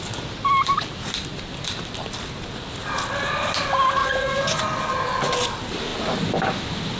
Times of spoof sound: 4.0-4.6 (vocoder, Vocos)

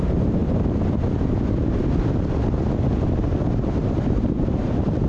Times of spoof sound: 1.8-2.3 (vocoder, BigVGAN v2); 3.8-5.1

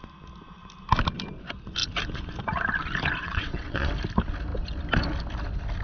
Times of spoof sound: 3.2-3.9 (vocoder, WaveNeXt)

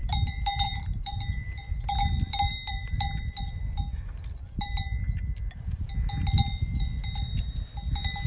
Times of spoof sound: 0.0-1.8 (vocoder, BigVGAN v2); 2.5-4.7

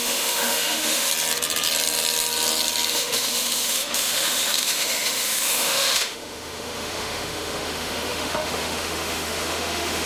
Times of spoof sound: 0.0-1.1 (autoencoder, DAC-VAE); 2.9-10.1

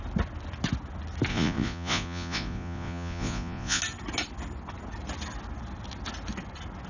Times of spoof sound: 1.3-3.8 (vocoder, Vocos)

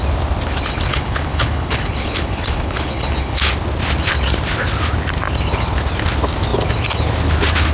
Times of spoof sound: 0.9-3.5 (codec, HILCodec)